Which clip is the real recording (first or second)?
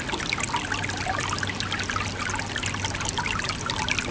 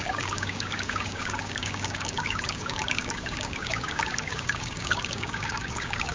first